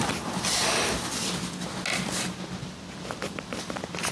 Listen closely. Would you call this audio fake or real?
real